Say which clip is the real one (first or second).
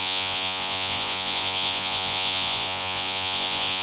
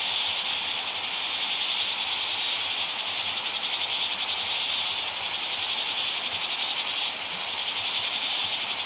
second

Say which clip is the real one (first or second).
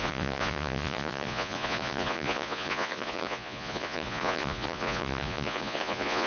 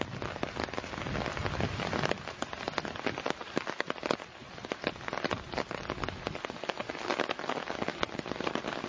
second